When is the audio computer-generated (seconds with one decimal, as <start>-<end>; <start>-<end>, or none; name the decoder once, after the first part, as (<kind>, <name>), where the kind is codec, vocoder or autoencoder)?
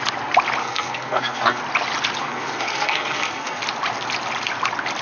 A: 0.6-1.6 (codec, SNAC); 2.2-3.6